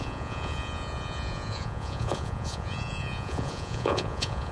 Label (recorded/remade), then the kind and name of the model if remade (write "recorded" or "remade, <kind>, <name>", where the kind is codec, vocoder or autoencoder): remade, vocoder, Vocos